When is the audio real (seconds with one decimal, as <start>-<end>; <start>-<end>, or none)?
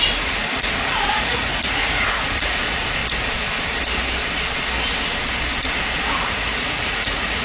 3.0-6.1